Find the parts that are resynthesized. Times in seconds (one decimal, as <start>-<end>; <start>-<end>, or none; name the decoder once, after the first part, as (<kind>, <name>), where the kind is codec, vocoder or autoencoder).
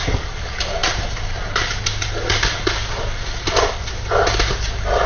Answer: none